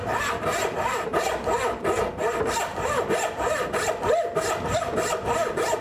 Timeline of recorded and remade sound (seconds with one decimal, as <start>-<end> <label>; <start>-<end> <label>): 0.0-1.1 remade; 1.1-2.0 recorded; 2.0-3.6 remade; 3.6-4.8 recorded; 4.8-5.8 remade